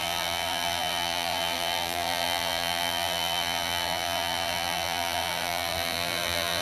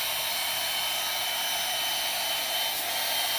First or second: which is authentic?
second